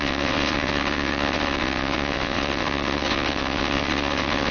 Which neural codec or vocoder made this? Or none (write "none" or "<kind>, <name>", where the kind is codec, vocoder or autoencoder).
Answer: vocoder, WaveNeXt